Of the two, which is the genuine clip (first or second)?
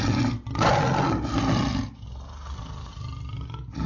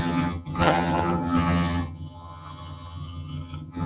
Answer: first